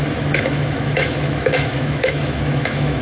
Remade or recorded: remade